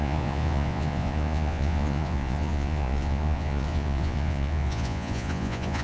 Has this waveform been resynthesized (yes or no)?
yes